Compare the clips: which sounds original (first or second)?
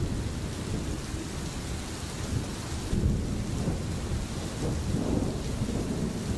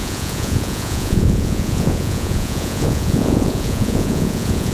first